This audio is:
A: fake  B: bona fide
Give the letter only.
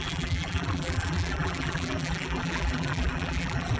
A